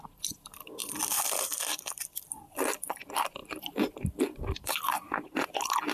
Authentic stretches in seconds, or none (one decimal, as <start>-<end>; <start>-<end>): 0.0-3.4; 4.8-5.9